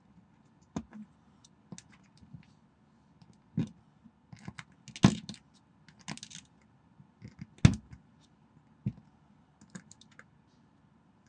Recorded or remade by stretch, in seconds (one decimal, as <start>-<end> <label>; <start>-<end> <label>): 0.0-11.3 recorded